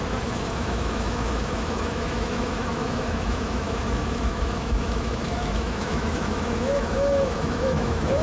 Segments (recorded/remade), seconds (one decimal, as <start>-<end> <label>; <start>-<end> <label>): 0.0-8.2 remade